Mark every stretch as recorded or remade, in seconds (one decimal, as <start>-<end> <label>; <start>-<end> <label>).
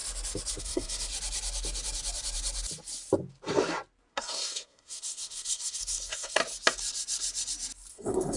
0.0-0.6 recorded; 0.6-1.1 remade; 1.1-4.1 recorded; 4.1-6.4 remade; 6.4-7.9 recorded; 7.9-8.4 remade